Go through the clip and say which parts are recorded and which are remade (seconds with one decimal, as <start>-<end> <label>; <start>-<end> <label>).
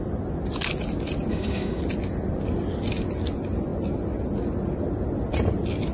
0.0-1.3 recorded; 1.3-1.8 remade; 1.8-5.9 recorded